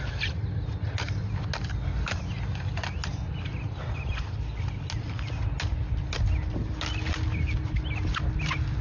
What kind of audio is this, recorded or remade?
recorded